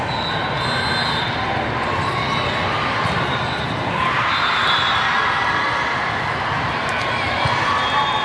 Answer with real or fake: real